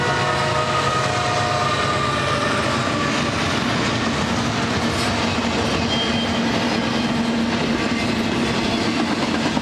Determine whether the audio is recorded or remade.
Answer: recorded